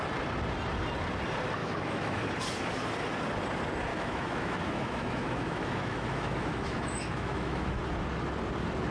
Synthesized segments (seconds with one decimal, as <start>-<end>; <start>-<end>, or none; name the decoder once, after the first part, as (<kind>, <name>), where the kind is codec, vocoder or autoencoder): 1.6-2.2 (autoencoder, DAC-VAE); 3.9-7.8